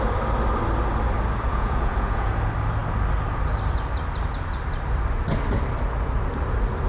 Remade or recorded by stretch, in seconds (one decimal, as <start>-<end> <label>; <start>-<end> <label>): 0.0-1.5 recorded; 1.5-2.4 remade; 2.4-6.9 recorded